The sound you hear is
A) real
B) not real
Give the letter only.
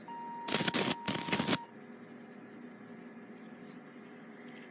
A